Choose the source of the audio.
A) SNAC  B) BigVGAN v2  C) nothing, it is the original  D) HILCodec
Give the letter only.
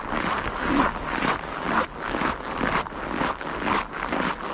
C